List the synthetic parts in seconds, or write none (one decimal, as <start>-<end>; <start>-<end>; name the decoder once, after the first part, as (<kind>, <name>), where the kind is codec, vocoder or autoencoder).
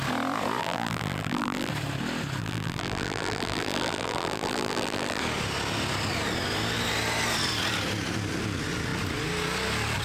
0.6-1.7 (vocoder, BigVGAN v2); 2.4-5.2